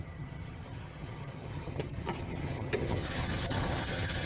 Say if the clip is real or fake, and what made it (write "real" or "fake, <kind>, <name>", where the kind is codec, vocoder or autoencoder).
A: fake, vocoder, HiFi-GAN